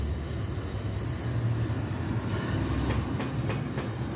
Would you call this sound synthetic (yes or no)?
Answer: no